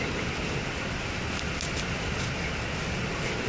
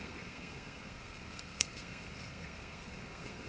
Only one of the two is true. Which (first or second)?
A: first